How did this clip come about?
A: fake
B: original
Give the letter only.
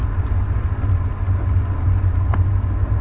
B